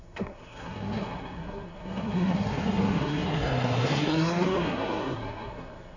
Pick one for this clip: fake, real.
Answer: fake